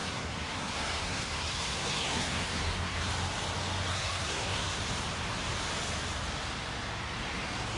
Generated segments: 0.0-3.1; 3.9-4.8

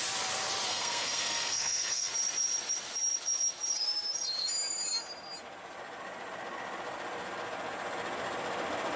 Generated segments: 0.7-2.1